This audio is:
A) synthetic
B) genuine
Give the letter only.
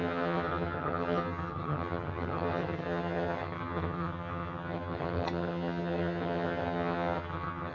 A